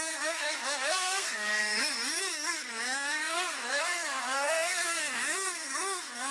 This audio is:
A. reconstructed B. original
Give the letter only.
A